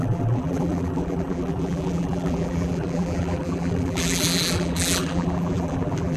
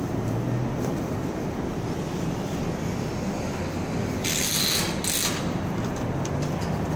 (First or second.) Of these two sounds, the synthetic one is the first